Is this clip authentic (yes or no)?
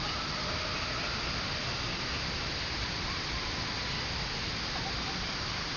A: yes